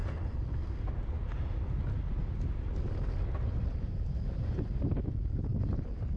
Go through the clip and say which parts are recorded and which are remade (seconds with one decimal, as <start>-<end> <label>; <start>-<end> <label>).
0.0-3.7 recorded; 3.7-5.1 remade; 5.1-6.2 recorded